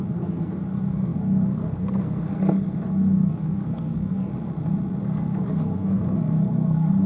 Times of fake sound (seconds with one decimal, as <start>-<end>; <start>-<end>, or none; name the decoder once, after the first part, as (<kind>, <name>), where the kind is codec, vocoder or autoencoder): 0.0-4.3 (codec, SNAC); 5.0-7.1